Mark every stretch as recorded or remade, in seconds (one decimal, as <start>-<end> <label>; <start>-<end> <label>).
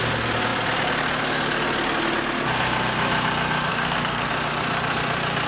0.0-3.7 recorded; 3.7-4.3 remade; 4.3-5.5 recorded